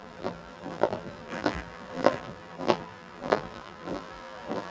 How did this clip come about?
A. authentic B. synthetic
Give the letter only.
B